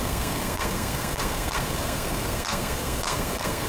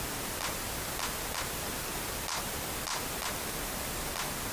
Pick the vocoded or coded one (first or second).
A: first